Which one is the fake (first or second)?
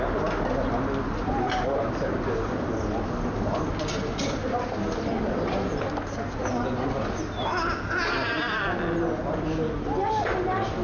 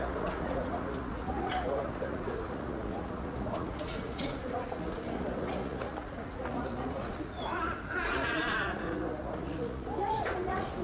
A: second